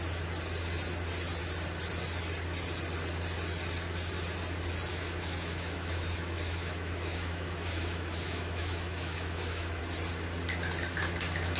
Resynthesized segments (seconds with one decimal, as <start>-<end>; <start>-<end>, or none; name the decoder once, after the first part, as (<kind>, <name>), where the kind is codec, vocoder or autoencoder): 4.9-9.8 (autoencoder, DAC-VAE)